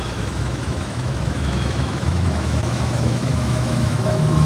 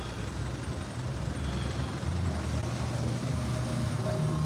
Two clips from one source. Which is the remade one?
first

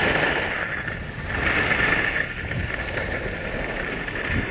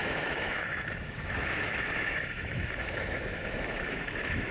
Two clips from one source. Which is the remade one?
second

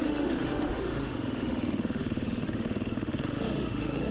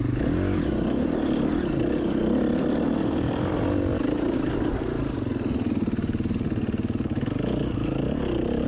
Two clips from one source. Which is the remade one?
first